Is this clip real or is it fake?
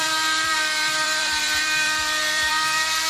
fake